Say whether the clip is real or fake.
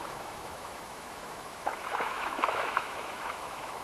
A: fake